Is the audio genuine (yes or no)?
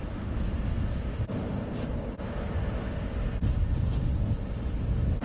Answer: yes